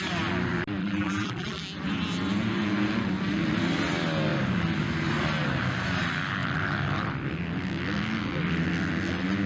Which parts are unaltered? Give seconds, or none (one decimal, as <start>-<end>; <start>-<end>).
0.0-0.8; 1.6-9.5